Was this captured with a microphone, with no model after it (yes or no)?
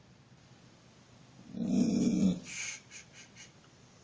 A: yes